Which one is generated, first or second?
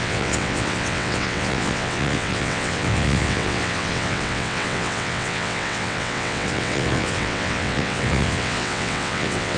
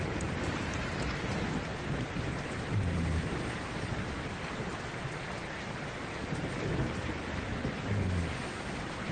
first